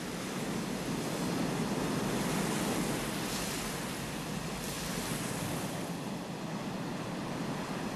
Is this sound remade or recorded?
recorded